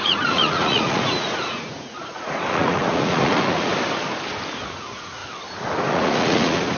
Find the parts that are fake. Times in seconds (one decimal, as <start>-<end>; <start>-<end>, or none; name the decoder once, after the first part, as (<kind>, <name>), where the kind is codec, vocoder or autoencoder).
0.0-3.7 (vocoder, Vocos); 4.5-5.2; 5.9-6.8